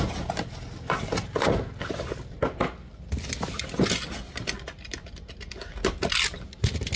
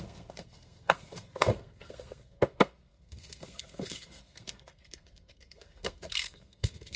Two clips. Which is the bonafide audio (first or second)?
first